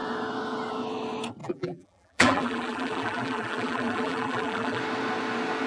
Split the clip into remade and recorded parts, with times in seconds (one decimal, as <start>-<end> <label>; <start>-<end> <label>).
0.0-1.4 recorded; 1.4-4.8 remade; 4.8-5.7 recorded